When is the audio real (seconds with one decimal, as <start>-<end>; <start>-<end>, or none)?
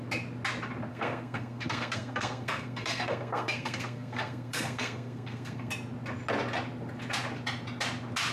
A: 0.0-0.9; 5.7-8.3